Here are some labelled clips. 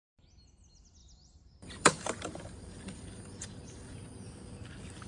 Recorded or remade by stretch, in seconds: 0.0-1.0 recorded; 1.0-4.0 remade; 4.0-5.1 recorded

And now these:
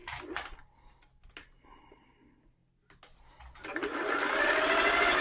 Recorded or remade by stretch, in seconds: 0.0-1.3 remade; 1.3-5.2 recorded

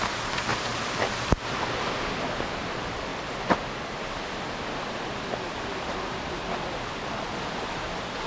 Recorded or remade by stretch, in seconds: 0.0-8.3 recorded

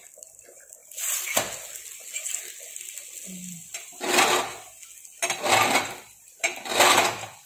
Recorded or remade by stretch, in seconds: 0.0-0.8 remade; 0.8-5.3 recorded; 5.3-7.5 remade

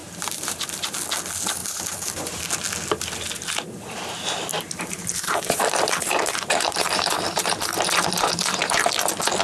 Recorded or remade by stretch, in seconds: 0.0-0.9 remade; 0.9-1.6 recorded; 1.6-2.4 remade; 2.4-4.5 recorded; 4.5-8.8 remade; 8.8-9.4 recorded

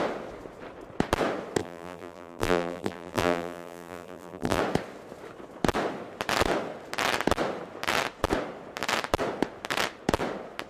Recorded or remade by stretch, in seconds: 0.0-1.6 recorded; 1.6-4.6 remade; 4.6-10.7 recorded

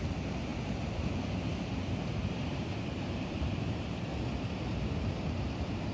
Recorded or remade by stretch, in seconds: 0.0-0.5 remade; 0.5-1.4 recorded; 1.4-4.1 remade; 4.1-4.8 recorded; 4.8-5.9 remade